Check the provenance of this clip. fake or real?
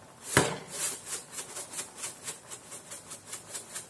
real